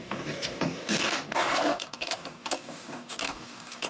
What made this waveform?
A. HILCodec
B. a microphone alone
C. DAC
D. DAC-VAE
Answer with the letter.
C